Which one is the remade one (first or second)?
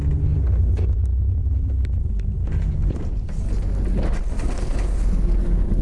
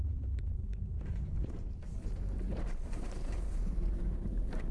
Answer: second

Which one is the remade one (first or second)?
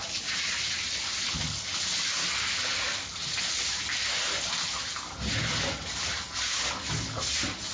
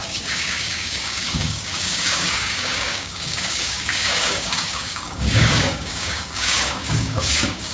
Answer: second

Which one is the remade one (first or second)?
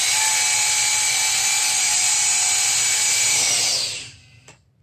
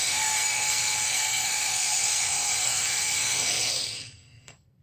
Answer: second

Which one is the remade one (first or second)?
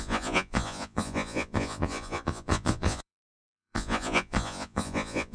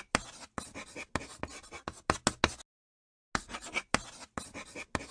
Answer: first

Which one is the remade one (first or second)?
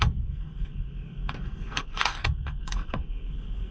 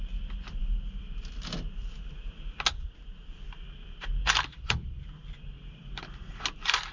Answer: first